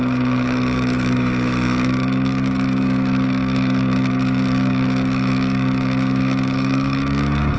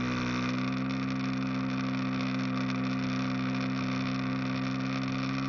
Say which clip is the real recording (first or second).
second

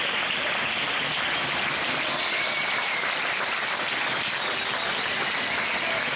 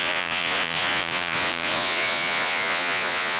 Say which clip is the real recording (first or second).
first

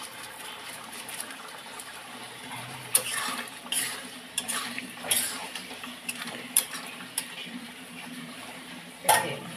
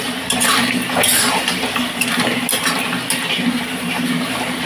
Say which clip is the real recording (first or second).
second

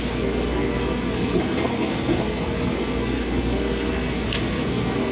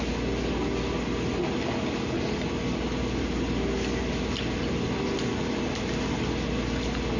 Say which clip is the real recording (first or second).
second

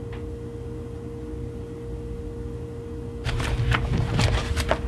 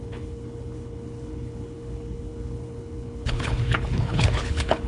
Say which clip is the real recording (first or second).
first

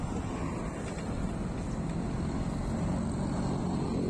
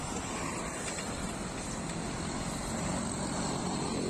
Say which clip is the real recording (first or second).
first